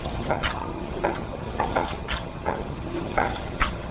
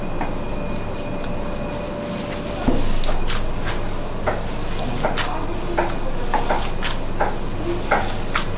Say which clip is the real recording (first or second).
second